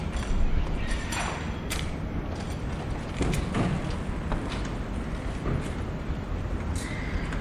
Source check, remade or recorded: recorded